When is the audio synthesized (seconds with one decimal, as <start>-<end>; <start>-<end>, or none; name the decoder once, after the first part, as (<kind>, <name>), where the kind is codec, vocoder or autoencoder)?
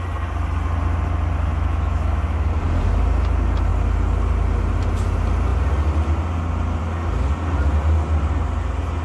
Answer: 1.5-2.5 (autoencoder, DAC-VAE)